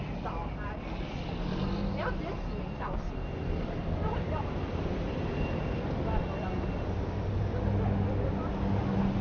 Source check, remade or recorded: recorded